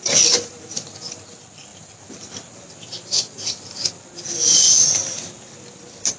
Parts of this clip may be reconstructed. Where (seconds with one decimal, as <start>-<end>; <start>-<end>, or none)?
none

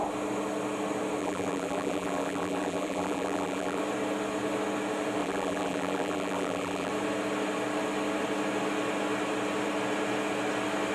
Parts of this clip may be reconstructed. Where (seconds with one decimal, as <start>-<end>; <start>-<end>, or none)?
1.2-3.8; 5.2-6.9

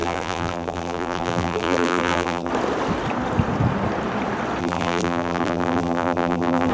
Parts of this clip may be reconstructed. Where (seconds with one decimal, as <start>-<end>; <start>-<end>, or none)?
0.0-2.5; 4.6-6.7

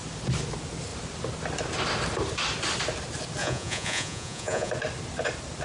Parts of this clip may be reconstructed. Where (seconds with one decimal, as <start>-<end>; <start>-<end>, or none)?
3.4-4.7

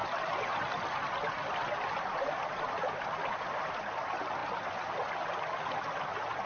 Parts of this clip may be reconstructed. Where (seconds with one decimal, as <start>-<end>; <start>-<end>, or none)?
0.0-3.8

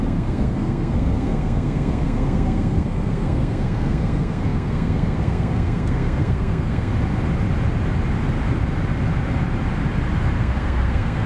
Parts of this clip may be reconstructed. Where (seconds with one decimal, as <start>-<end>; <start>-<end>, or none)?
0.0-6.9; 10.4-11.3